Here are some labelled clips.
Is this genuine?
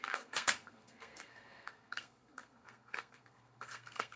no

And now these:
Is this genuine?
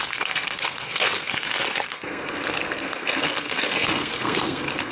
no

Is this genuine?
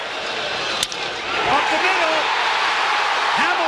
yes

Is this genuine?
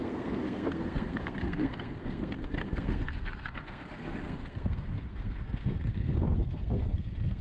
no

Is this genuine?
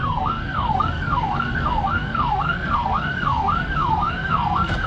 no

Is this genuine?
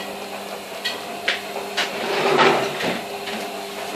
yes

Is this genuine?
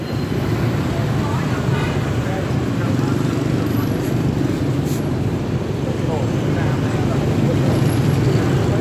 yes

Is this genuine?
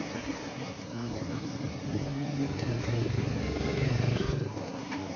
no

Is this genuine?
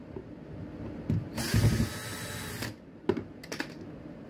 yes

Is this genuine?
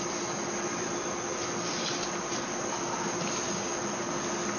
yes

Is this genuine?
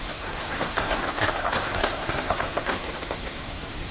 no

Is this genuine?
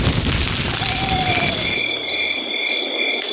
yes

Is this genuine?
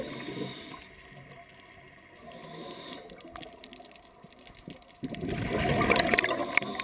yes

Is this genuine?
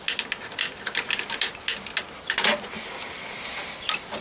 yes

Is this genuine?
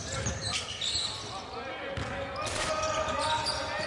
yes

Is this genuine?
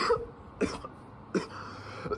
yes